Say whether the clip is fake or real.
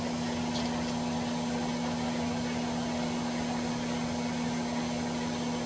real